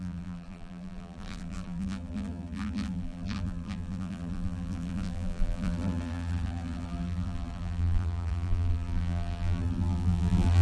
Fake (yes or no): yes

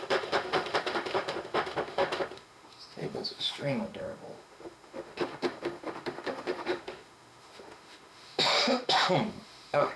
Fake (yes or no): yes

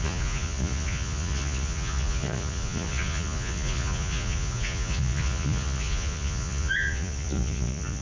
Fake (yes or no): yes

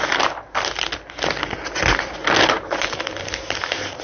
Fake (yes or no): no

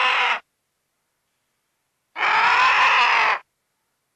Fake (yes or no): no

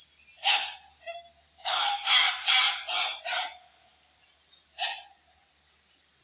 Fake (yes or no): no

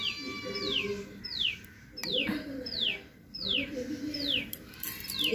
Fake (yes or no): no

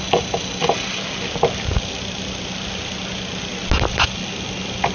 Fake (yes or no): no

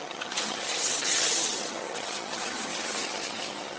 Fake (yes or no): yes